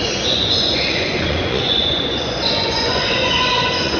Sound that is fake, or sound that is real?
fake